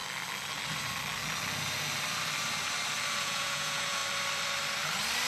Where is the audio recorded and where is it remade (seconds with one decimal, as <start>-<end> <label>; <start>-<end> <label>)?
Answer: 0.0-3.2 recorded; 3.2-4.0 remade; 4.0-5.3 recorded